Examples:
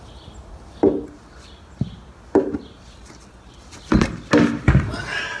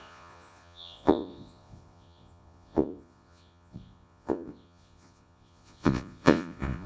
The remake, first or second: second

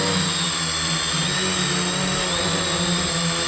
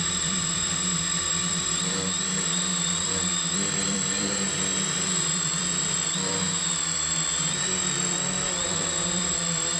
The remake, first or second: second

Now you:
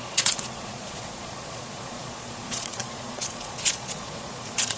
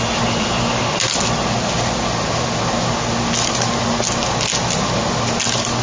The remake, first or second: first